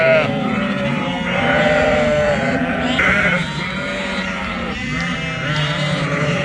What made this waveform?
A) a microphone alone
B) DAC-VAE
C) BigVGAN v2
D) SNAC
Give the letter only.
C